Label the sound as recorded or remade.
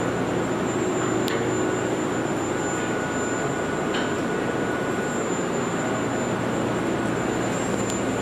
recorded